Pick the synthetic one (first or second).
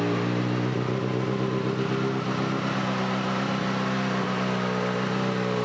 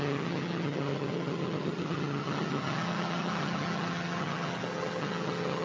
second